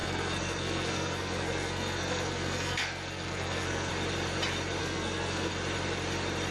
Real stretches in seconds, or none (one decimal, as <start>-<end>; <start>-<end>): 3.9-4.8; 5.5-6.5